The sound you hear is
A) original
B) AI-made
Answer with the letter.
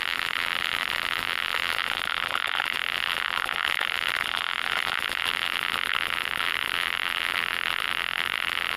B